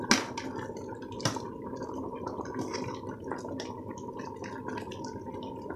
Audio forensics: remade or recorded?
recorded